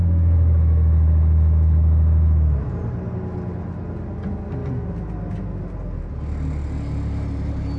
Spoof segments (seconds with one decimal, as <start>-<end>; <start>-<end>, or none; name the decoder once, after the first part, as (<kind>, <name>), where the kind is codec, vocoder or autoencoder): 0.0-2.7 (autoencoder, DAC-VAE)